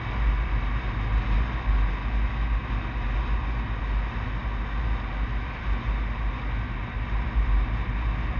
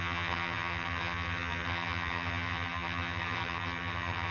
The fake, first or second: second